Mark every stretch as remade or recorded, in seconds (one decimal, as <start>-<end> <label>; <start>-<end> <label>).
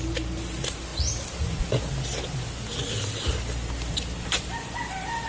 0.0-5.3 remade